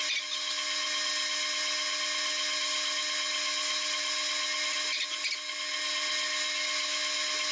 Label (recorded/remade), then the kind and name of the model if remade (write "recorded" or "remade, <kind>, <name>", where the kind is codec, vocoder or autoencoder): recorded